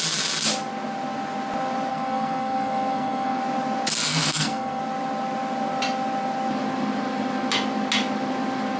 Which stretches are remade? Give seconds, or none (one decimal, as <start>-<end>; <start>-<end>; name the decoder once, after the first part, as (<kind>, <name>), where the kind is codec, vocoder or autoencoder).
1.9-3.4 (codec, SNAC); 4.1-4.8